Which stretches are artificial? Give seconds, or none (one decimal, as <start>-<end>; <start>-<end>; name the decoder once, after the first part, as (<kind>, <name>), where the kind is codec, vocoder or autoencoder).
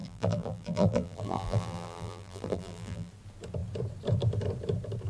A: 0.0-3.1 (vocoder, BigVGAN v2)